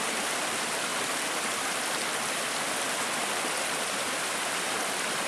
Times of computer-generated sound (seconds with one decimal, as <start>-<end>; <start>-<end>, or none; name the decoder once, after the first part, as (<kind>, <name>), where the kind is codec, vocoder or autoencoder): 0.0-0.9 (vocoder, BigVGAN v2); 3.8-5.3